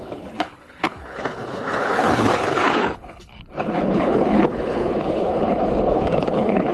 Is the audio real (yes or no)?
no